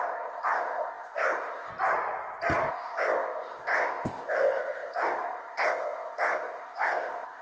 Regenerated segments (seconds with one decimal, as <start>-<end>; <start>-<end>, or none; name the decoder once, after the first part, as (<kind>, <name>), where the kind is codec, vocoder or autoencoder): 0.0-1.7 (codec, ZipCodec); 2.7-7.4